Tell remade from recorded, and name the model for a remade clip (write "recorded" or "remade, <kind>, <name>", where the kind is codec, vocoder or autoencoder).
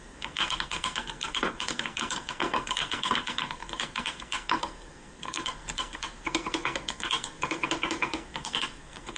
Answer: remade, codec, SNAC